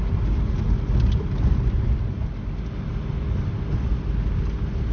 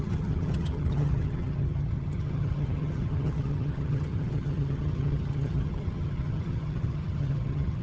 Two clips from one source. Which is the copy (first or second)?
second